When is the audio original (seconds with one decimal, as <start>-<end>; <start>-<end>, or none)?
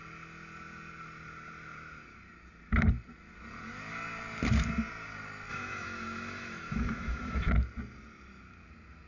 0.0-5.5; 7.5-9.1